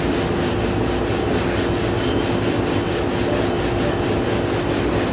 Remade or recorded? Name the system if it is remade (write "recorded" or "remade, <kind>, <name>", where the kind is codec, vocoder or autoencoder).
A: recorded